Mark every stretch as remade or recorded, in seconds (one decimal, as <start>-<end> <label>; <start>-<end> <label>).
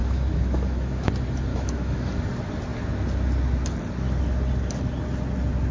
0.0-1.1 remade; 1.1-1.5 recorded; 1.5-2.2 remade; 2.2-5.7 recorded